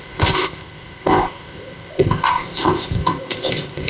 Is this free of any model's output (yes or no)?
no